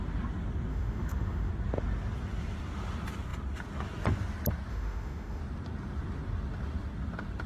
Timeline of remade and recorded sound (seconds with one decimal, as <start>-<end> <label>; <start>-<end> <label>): 0.0-0.7 recorded; 0.7-1.5 remade; 1.5-4.7 recorded; 4.7-5.4 remade; 5.4-7.5 recorded